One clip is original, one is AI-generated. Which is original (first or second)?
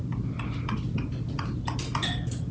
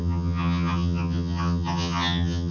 first